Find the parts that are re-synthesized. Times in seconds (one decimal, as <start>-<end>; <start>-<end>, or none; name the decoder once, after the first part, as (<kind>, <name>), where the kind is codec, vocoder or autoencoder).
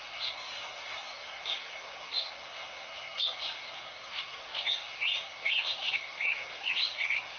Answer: 0.0-7.4 (codec, SNAC)